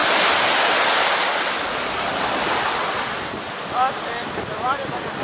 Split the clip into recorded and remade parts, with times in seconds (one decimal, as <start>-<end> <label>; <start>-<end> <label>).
0.0-5.2 recorded